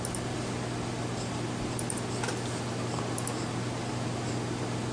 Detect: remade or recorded recorded